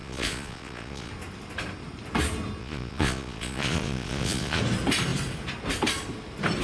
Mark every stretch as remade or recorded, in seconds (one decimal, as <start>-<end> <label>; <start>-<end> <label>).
0.0-1.1 remade; 1.1-2.6 recorded; 2.6-4.6 remade; 4.6-6.6 recorded